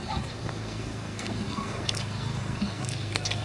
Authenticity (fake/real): fake